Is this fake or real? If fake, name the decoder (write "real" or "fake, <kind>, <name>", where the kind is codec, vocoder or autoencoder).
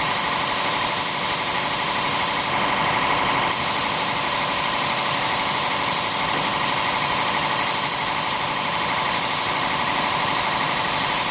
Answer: real